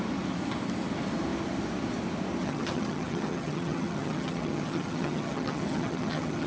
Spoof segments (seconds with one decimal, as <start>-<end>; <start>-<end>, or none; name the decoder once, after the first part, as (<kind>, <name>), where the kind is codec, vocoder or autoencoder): 2.4-6.5 (vocoder, HiFi-GAN)